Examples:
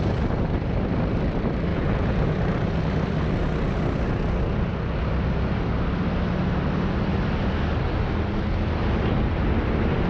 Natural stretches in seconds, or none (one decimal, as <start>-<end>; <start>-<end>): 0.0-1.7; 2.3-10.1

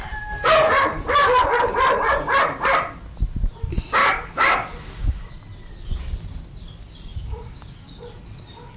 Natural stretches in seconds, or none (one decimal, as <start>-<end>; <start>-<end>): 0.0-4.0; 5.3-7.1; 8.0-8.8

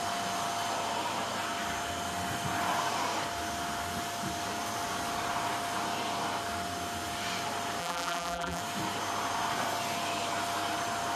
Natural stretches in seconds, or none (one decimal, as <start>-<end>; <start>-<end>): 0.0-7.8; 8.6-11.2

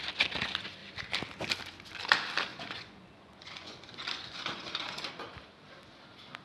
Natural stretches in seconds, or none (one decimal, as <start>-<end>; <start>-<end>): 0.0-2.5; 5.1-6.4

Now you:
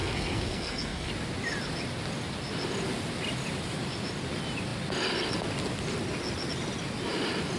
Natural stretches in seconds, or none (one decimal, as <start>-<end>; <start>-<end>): 1.1-7.6